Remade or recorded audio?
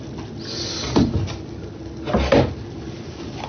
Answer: recorded